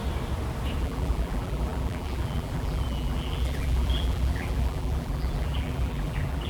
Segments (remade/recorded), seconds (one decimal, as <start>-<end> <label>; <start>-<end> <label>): 0.0-0.8 recorded; 0.8-6.5 remade